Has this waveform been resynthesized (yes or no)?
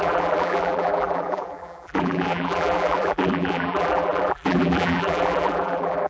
yes